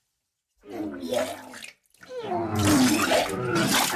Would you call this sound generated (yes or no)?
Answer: no